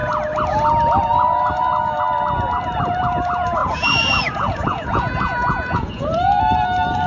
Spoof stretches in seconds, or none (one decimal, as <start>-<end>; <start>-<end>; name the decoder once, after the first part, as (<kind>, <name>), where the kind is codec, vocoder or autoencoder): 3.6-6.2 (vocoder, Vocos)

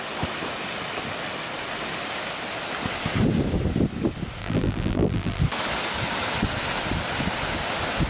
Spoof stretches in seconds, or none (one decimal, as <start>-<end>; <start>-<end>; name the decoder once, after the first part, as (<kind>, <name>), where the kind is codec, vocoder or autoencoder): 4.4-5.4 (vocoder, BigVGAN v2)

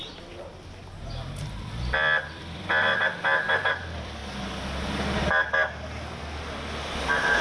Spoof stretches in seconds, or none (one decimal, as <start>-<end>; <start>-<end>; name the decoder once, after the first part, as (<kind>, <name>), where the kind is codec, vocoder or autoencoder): 1.1-2.9 (vocoder, BigVGAN v2); 3.7-4.2